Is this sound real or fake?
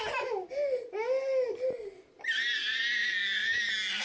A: real